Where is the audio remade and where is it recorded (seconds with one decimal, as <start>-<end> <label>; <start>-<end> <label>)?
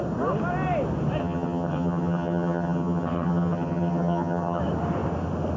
0.0-1.2 recorded; 1.2-4.6 remade; 4.6-5.6 recorded